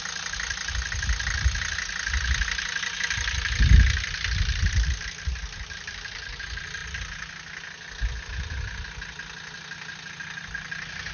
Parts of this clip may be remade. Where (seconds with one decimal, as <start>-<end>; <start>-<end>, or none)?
none